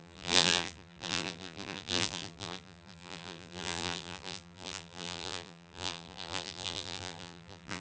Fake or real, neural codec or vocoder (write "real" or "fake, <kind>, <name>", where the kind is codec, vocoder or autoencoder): fake, vocoder, BigVGAN v2